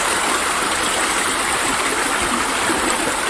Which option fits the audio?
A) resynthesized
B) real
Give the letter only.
B